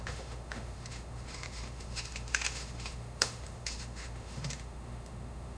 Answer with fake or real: fake